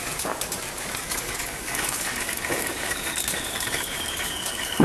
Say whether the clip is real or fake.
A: fake